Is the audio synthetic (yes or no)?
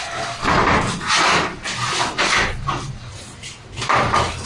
no